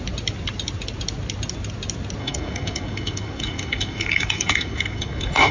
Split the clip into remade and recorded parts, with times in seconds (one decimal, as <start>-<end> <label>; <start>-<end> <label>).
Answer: 0.0-2.2 recorded; 2.2-5.5 remade